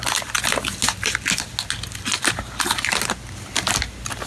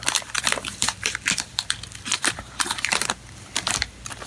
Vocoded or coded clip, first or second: second